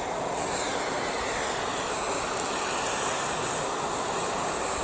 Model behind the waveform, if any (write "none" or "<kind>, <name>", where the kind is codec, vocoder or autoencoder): none